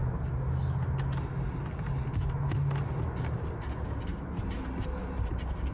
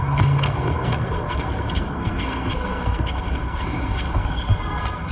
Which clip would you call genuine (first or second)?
first